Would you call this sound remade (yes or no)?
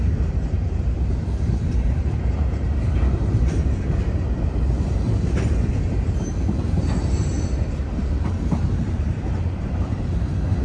yes